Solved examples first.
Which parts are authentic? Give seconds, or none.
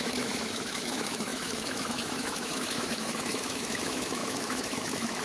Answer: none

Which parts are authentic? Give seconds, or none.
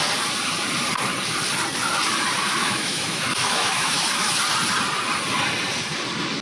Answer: 0.0-2.6; 4.3-6.4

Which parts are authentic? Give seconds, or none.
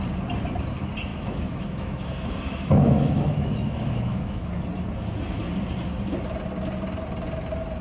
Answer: 0.0-1.1; 4.5-7.8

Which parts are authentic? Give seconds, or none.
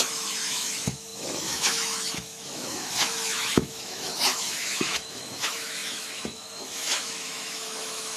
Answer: none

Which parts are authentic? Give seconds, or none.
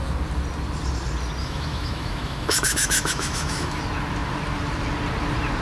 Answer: 0.0-1.4; 3.8-5.6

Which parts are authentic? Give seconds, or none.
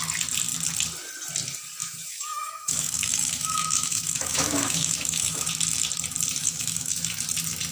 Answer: 0.0-1.8; 5.5-6.4; 7.2-7.7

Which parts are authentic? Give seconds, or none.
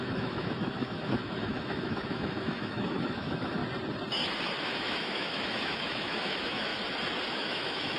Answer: 3.6-4.6; 6.7-7.3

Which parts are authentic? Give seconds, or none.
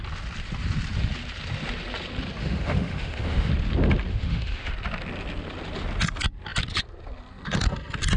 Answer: 0.0-2.4; 3.5-4.1; 4.7-8.2